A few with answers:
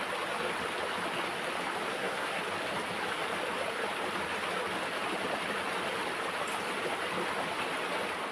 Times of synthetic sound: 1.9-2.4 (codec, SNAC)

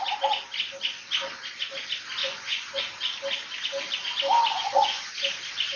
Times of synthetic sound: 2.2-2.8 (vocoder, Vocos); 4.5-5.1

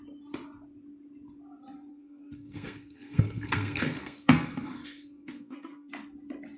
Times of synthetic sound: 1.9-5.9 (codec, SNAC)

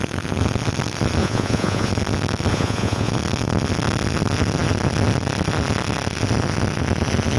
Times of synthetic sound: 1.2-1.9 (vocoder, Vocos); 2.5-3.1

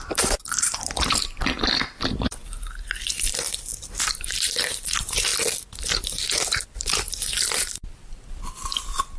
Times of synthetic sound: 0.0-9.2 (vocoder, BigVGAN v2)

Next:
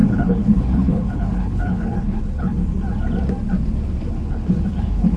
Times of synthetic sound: 0.0-2.6 (codec, HILCodec); 4.1-5.2

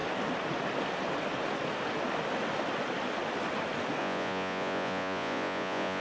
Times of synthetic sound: 4.0-6.0 (vocoder, Vocos)

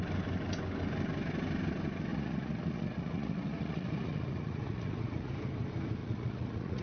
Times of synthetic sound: 2.1-5.3 (vocoder, Vocos); 6.0-6.8